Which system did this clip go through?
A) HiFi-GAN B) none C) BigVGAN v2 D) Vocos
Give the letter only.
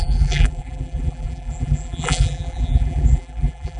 C